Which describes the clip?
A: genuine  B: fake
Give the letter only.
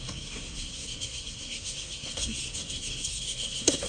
B